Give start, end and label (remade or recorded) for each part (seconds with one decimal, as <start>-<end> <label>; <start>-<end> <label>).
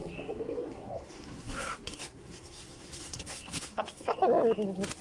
0.0-4.1 remade; 4.1-5.0 recorded